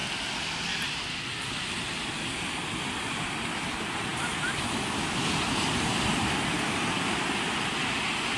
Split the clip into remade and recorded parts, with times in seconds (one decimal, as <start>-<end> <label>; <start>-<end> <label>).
0.0-8.4 recorded